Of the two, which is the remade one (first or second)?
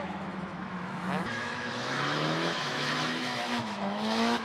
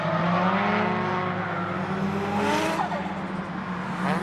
first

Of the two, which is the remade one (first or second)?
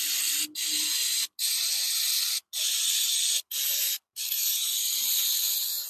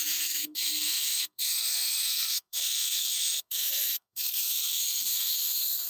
second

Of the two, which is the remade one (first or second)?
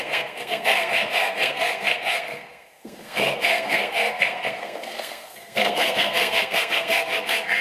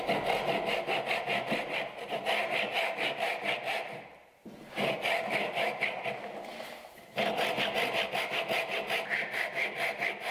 first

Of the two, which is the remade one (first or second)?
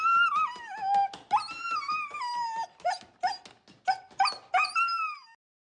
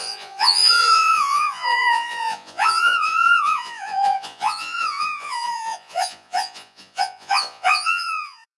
second